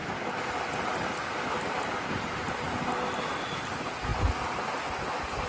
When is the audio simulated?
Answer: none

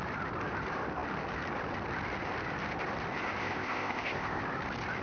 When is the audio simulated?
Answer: 3.4-4.4 (codec, ZipCodec)

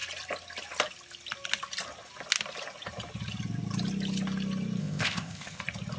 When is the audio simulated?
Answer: 4.8-5.6 (codec, ZipCodec)

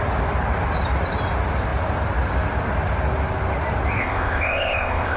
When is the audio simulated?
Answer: 4.0-5.2 (codec, ZipCodec)

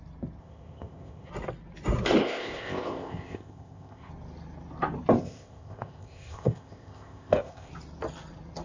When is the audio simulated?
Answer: 0.4-1.3 (codec, ZipCodec); 2.2-4.1; 5.2-7.7

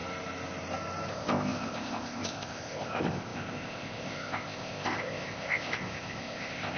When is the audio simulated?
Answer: 1.1-6.8 (codec, ZipCodec)